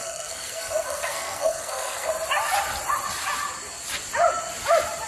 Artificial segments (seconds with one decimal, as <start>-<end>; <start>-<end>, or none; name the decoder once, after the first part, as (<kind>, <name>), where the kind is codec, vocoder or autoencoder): 0.0-2.1 (codec, SNAC)